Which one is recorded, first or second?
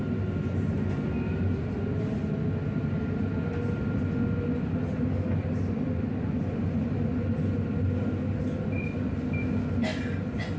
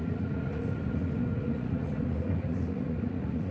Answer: first